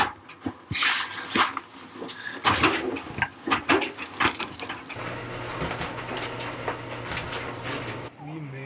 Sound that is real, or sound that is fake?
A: real